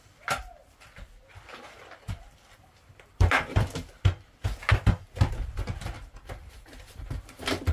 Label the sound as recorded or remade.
remade